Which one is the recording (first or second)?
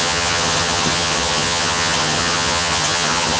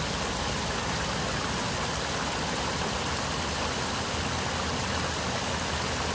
second